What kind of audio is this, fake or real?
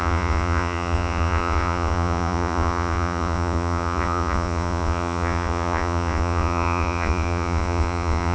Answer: fake